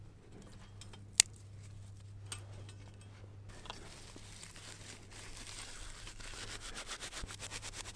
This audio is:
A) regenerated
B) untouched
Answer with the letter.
B